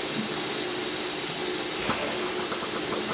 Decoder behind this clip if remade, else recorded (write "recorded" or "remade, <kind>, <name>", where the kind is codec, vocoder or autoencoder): recorded